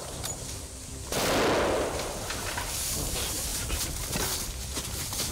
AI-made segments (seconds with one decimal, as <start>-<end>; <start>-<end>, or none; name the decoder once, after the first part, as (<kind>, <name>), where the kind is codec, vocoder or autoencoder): 0.0-0.9 (vocoder, BigVGAN v2); 2.4-3.5